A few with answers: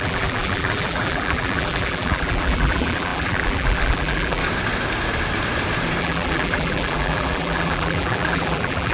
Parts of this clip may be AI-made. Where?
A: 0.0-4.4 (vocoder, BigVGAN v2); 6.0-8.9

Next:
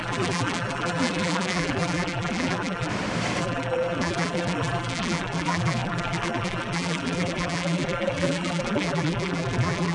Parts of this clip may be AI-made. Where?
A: 0.0-2.9 (vocoder, BigVGAN v2); 3.4-9.9

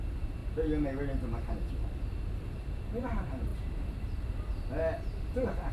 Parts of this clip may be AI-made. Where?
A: 0.0-0.4 (vocoder, BigVGAN v2); 1.7-5.7

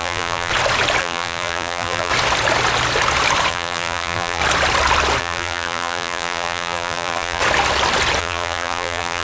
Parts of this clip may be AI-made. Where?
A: 0.0-0.5 (vocoder, BigVGAN v2); 1.0-2.1; 3.5-4.4; 5.2-7.4; 8.2-9.2